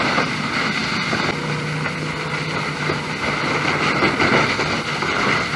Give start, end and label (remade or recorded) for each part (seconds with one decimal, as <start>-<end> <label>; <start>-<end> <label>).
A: 0.0-5.6 recorded